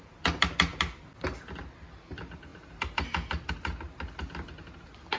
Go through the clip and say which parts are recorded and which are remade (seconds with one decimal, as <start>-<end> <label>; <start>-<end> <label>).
0.0-5.2 recorded